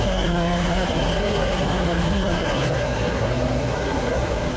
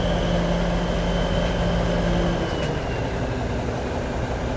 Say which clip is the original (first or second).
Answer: second